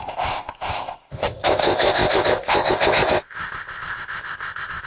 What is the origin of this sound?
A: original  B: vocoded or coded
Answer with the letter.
B